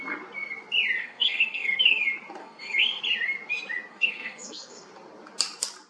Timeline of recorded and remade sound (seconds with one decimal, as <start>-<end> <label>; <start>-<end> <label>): 0.0-1.0 recorded; 1.0-2.0 remade; 2.0-2.4 recorded; 2.4-3.0 remade; 3.0-3.9 recorded; 3.9-4.9 remade; 4.9-5.9 recorded